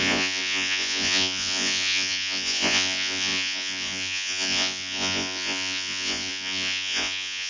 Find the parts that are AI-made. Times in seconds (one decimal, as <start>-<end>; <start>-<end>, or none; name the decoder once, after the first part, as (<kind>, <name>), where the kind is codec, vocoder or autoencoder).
0.0-7.5 (vocoder, Vocos)